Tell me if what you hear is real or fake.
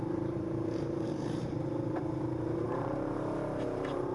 fake